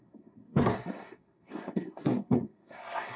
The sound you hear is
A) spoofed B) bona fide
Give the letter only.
A